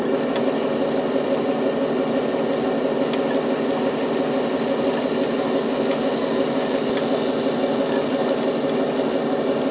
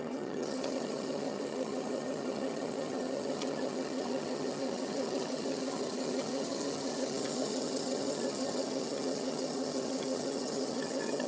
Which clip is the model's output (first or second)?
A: second